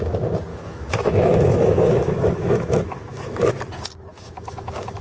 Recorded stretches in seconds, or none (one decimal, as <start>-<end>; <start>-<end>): 0.0-0.5; 3.5-4.1